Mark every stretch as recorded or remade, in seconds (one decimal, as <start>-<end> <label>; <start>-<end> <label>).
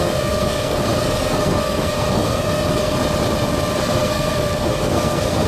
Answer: 0.0-3.0 remade; 3.0-3.8 recorded; 3.8-5.5 remade